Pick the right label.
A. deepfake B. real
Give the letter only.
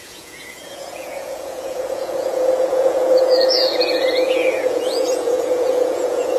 A